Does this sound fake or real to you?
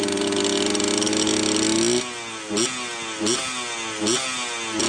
real